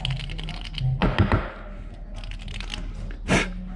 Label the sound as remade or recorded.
recorded